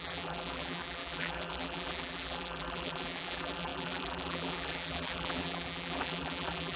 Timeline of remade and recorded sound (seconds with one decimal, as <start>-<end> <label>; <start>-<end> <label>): 0.0-6.8 remade

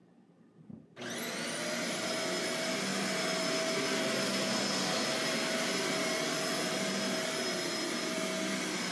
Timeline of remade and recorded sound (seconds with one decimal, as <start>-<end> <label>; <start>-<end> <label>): 0.0-8.9 recorded

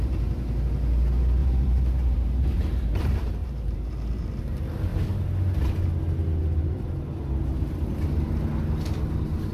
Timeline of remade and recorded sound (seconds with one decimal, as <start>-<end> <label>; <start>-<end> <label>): 0.0-1.4 recorded; 1.4-3.0 remade; 3.0-3.4 recorded; 3.4-4.4 remade; 4.4-9.5 recorded

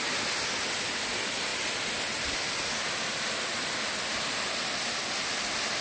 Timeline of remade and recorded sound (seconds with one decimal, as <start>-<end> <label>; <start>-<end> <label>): 0.0-5.8 recorded

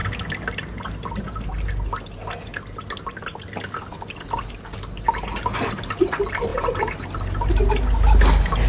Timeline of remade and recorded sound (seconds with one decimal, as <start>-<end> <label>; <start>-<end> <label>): 0.0-8.7 recorded